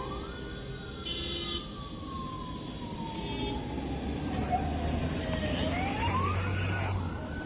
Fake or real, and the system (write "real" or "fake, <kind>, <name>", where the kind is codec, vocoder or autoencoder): real